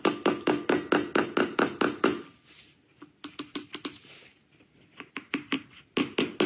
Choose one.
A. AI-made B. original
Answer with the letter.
B